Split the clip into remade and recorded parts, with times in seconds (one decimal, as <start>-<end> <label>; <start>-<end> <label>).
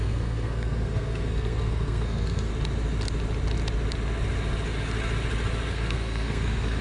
0.0-2.5 remade; 2.5-5.7 recorded; 5.7-6.8 remade